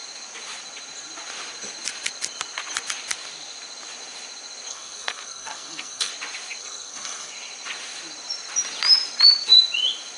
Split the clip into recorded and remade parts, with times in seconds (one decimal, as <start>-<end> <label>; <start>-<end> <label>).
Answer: 0.0-4.7 recorded; 4.7-6.1 remade; 6.1-6.6 recorded; 6.6-7.3 remade; 7.3-10.2 recorded